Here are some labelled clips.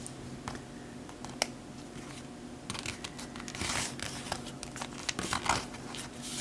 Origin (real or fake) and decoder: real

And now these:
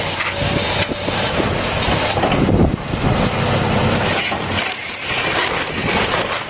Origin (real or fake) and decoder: real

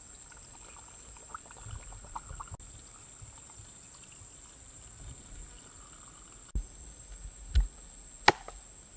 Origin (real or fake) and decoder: real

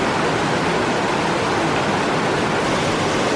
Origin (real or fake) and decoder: real